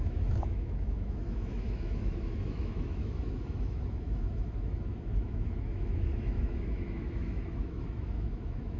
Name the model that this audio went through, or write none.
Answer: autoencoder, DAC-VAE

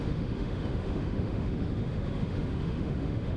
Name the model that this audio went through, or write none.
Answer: autoencoder, DAC-VAE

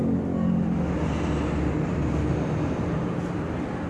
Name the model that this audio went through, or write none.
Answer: none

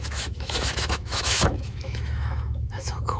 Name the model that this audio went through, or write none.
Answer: autoencoder, DAC-VAE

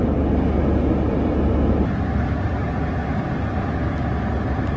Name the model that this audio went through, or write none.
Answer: none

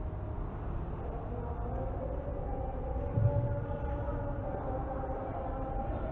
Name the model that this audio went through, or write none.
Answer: none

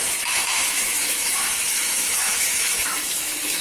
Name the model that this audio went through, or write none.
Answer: autoencoder, DAC-VAE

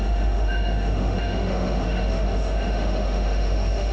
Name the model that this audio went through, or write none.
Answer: autoencoder, DAC-VAE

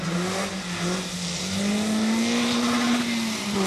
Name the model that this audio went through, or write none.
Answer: none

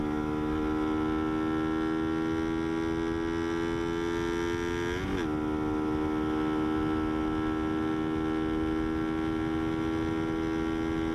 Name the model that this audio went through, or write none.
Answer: none